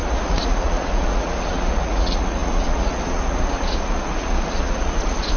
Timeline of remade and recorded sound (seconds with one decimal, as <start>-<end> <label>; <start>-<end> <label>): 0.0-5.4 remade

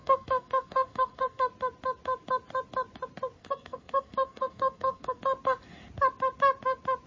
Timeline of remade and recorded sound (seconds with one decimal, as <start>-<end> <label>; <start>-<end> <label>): 0.0-1.4 remade; 1.4-3.4 recorded; 3.4-5.2 remade; 5.2-7.1 recorded

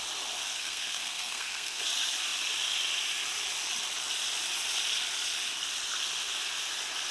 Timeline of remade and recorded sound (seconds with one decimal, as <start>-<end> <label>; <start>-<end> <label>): 0.0-0.4 recorded; 0.4-1.8 remade; 1.8-7.1 recorded

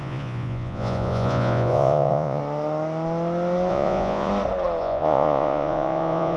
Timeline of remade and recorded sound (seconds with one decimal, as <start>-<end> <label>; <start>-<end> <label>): 0.0-2.4 remade; 2.4-3.7 recorded; 3.7-4.3 remade; 4.3-4.8 recorded; 4.8-6.4 remade

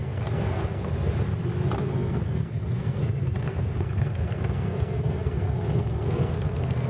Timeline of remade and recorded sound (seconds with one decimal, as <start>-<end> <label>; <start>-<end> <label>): 0.0-0.9 remade; 0.9-1.8 recorded; 1.8-6.9 remade

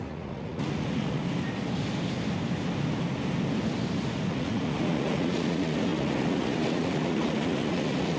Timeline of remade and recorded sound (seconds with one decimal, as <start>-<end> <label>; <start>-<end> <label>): 0.0-1.2 remade; 1.2-4.3 recorded; 4.3-8.2 remade

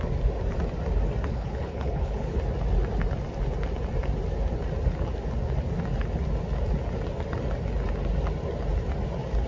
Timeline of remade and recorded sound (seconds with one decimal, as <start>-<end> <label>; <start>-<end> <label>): 0.0-1.3 recorded; 1.3-2.4 remade; 2.4-9.5 recorded

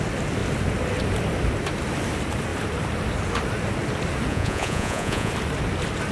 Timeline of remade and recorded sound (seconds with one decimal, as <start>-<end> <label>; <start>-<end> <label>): 0.0-4.3 recorded; 4.3-5.3 remade; 5.3-6.1 recorded